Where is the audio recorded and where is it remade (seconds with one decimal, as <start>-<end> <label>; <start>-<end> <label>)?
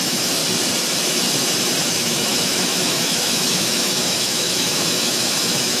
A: 0.0-0.4 remade; 0.4-1.8 recorded; 1.8-5.8 remade